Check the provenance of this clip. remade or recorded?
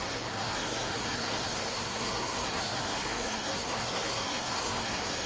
remade